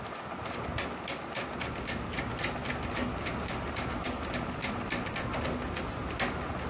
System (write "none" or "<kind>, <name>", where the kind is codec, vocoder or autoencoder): none